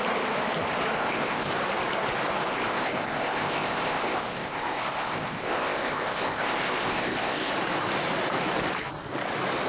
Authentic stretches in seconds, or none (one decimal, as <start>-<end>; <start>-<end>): 0.0-1.0; 1.5-2.5; 7.5-9.7